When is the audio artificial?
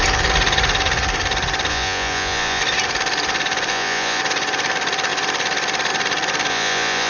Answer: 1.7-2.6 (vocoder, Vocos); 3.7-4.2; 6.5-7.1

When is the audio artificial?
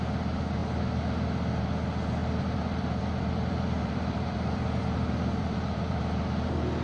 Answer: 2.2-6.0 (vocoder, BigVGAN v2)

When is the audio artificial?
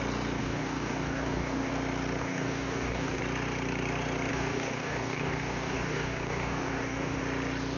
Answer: 0.4-1.7 (codec, DAC); 2.2-3.2; 4.3-7.2